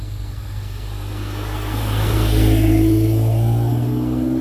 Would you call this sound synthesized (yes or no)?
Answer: yes